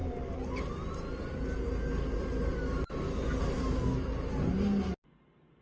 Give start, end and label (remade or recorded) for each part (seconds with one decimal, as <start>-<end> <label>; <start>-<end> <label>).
0.0-5.6 recorded

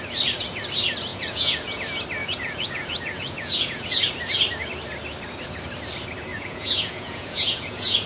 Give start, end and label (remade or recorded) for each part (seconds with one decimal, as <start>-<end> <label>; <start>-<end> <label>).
0.0-1.1 recorded; 1.1-1.8 remade; 1.8-2.2 recorded; 2.2-4.1 remade; 4.1-6.3 recorded; 6.3-8.1 remade

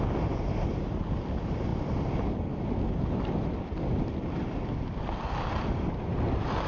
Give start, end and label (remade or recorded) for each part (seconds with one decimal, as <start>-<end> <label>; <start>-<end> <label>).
0.0-6.7 recorded

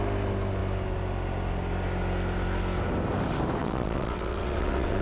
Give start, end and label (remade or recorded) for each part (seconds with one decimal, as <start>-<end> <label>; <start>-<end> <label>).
0.0-3.6 recorded; 3.6-5.0 remade

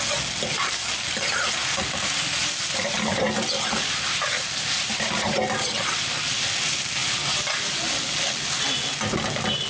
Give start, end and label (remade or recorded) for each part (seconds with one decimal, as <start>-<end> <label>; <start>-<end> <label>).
0.0-9.7 recorded